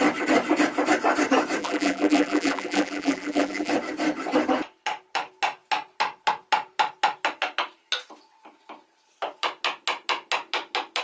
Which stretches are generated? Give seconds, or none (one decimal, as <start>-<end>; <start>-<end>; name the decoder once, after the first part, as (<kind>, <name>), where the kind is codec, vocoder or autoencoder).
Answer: 1.6-3.7 (vocoder, BigVGAN v2)